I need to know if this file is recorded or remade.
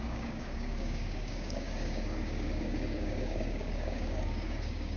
remade